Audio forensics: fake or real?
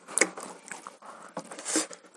real